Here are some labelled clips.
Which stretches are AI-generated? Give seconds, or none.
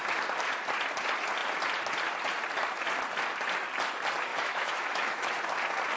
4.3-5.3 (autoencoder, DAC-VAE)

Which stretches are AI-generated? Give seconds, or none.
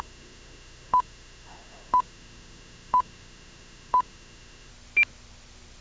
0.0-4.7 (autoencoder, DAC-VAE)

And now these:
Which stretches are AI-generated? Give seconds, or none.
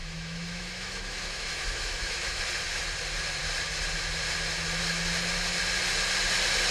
0.0-2.4 (autoencoder, DAC-VAE)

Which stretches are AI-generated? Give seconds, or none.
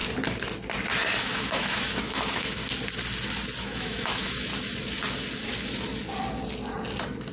1.2-2.6 (autoencoder, DAC-VAE); 3.6-4.5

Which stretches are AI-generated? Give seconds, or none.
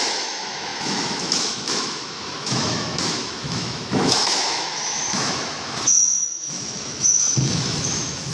0.0-8.3 (autoencoder, DAC-VAE)